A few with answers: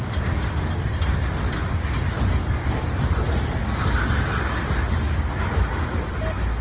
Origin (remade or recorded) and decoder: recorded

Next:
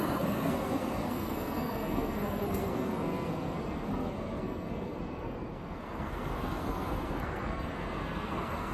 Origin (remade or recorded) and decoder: remade, codec, SNAC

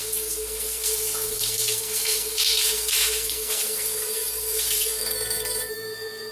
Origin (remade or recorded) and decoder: remade, codec, SNAC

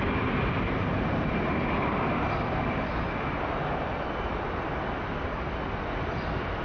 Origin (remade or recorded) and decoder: recorded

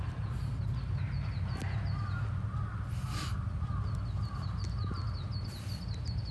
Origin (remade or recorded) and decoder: recorded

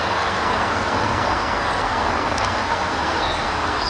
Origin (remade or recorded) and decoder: remade, codec, SNAC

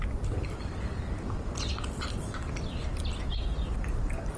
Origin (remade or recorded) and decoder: recorded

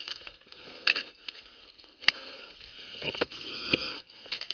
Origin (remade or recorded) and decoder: remade, codec, SNAC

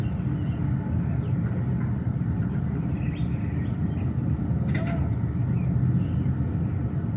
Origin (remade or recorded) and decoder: recorded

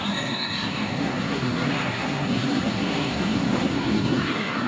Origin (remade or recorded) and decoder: remade, codec, SNAC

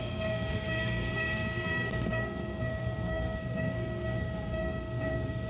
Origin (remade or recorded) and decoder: remade, codec, SNAC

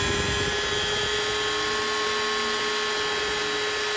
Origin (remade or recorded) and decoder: recorded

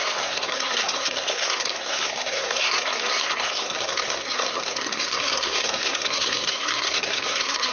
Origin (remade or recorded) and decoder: remade, codec, SNAC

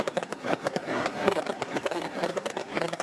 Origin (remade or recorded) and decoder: remade, codec, SNAC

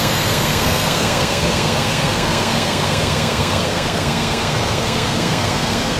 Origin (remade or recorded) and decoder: remade, codec, SNAC